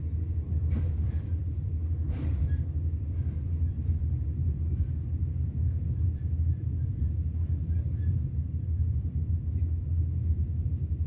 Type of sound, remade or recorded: remade